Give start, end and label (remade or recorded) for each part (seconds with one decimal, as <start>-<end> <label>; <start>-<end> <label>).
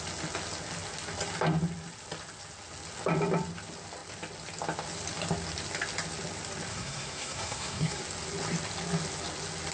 0.0-6.7 recorded; 6.7-8.0 remade; 8.0-9.7 recorded